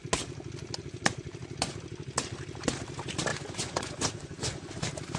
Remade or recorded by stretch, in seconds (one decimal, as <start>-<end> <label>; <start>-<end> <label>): 0.0-3.3 recorded; 3.3-4.7 remade; 4.7-5.2 recorded